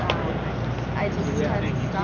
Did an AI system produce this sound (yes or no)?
no